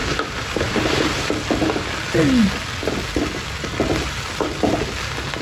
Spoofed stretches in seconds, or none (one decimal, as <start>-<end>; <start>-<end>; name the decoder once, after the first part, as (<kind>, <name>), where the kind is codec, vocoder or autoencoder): 0.0-1.3 (vocoder, BigVGAN v2)